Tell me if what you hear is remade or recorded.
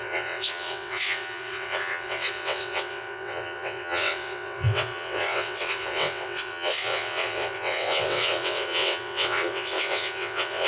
remade